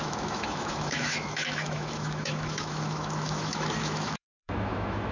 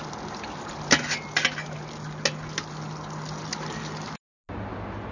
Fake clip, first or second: first